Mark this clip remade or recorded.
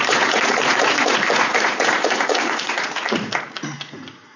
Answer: remade